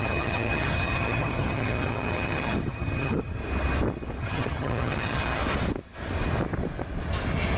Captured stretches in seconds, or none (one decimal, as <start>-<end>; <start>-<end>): 3.4-4.2; 5.4-7.6